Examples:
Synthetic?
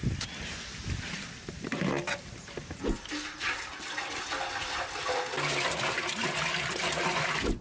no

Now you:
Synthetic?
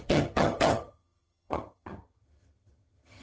yes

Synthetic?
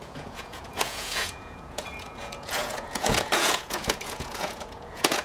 yes